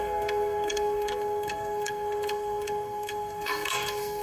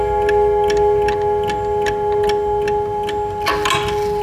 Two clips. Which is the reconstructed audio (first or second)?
first